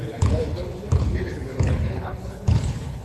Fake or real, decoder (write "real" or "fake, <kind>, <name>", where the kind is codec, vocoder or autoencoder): fake, codec, HILCodec